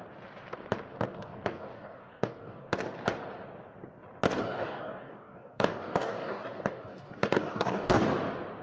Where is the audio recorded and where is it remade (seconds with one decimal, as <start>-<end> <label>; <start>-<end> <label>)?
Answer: 0.0-0.9 recorded; 0.9-2.7 remade; 2.7-4.4 recorded; 4.4-8.0 remade; 8.0-8.6 recorded